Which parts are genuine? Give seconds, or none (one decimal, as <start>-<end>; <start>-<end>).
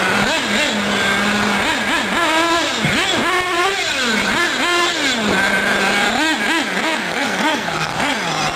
0.0-6.8; 8.1-8.6